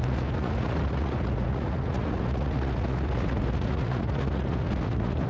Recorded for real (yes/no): no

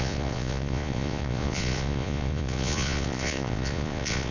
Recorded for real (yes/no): no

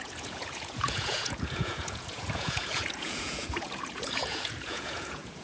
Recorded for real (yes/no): no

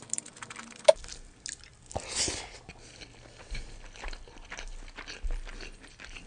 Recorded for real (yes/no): yes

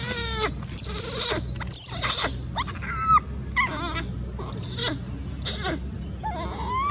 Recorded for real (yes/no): yes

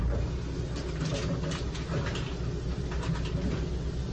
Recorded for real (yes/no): yes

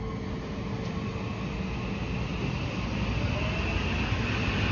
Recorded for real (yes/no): yes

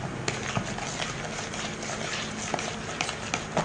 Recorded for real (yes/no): yes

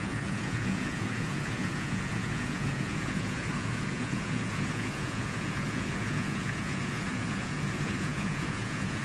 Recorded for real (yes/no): no